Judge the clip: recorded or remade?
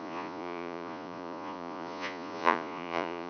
remade